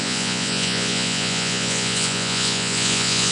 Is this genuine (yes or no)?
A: no